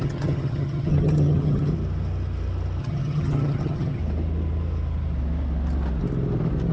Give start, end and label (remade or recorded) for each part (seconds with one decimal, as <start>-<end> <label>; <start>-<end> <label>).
0.0-1.7 remade; 1.7-2.8 recorded; 2.8-4.0 remade; 4.0-6.7 recorded